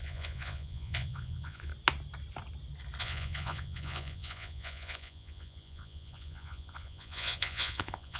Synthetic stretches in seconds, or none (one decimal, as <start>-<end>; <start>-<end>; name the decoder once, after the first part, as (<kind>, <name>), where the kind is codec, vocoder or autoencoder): 0.0-1.7 (vocoder, Vocos); 3.0-8.2